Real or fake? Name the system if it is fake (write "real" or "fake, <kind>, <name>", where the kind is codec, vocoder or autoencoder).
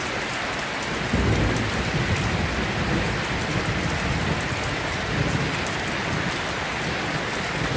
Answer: real